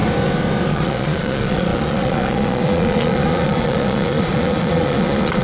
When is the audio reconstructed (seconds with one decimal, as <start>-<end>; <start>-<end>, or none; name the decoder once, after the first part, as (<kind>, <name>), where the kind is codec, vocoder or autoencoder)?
0.7-5.4 (vocoder, Vocos)

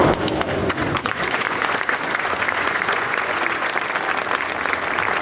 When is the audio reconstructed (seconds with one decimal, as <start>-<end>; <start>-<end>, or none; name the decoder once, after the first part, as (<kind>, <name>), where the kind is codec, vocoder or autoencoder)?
0.6-3.7 (vocoder, Vocos)

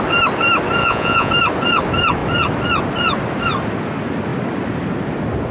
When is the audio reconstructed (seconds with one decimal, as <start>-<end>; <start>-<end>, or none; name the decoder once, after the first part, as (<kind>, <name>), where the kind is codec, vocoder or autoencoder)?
0.8-1.3 (vocoder, Vocos)

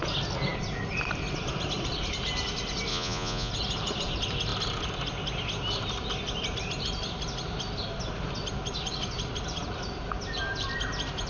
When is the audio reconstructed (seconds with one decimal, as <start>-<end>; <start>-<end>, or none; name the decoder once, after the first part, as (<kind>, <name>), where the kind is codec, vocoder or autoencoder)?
2.9-3.5 (vocoder, Vocos)